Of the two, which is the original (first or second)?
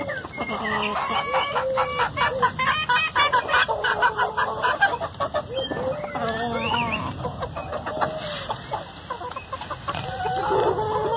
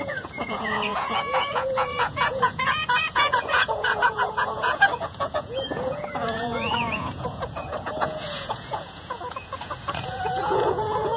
first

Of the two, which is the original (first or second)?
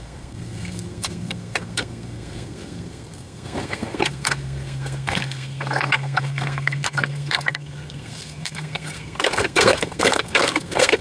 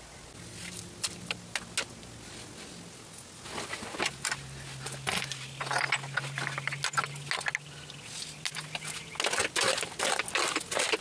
second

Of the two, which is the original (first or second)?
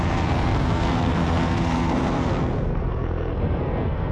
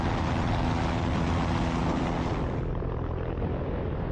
second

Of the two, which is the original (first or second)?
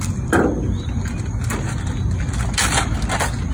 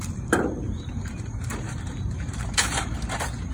first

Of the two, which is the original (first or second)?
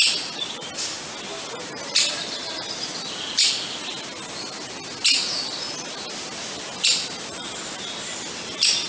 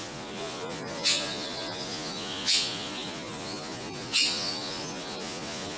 first